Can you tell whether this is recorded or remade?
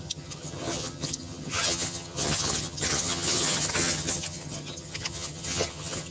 remade